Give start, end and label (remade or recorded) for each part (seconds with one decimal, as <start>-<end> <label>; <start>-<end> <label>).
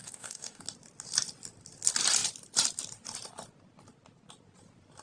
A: 0.0-0.6 remade; 0.6-5.0 recorded